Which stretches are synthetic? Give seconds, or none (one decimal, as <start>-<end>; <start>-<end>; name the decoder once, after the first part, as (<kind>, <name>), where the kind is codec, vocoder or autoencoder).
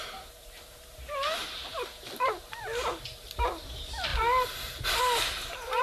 0.0-5.8 (vocoder, BigVGAN v2)